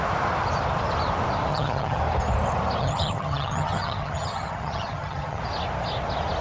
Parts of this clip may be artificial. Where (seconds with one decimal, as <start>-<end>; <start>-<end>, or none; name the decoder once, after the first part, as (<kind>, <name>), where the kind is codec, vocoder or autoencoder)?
1.5-2.0 (vocoder, HiFi-GAN); 2.8-5.4